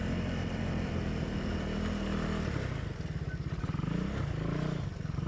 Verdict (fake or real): real